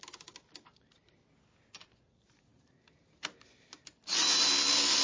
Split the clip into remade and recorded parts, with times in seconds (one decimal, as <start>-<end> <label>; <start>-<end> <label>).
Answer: 0.0-5.0 recorded

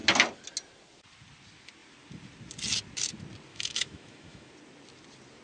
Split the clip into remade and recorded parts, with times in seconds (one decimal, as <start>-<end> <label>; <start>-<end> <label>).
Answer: 0.0-3.5 recorded; 3.5-4.5 remade; 4.5-5.4 recorded

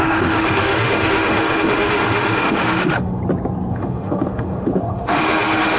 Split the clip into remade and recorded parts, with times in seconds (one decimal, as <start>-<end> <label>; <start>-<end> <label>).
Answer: 0.0-3.2 remade; 3.2-3.7 recorded; 3.7-5.8 remade

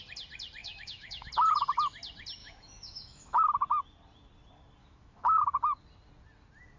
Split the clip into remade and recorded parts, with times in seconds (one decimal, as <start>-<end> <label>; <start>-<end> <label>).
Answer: 0.0-0.6 recorded; 0.6-1.3 remade; 1.3-2.4 recorded; 2.4-3.4 remade; 3.4-4.8 recorded; 4.8-5.4 remade; 5.4-6.8 recorded

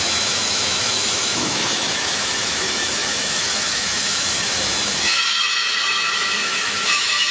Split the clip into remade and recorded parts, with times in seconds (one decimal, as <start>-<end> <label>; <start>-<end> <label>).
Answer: 0.0-7.3 remade

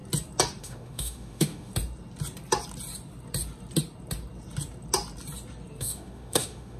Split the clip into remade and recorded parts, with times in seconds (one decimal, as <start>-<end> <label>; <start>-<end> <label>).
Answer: 0.0-0.6 recorded; 0.6-1.7 remade; 1.7-5.8 recorded; 5.8-6.8 remade

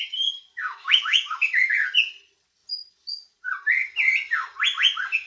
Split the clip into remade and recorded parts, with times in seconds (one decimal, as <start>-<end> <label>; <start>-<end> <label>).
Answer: 0.0-0.5 recorded; 0.5-1.7 remade; 1.7-5.3 recorded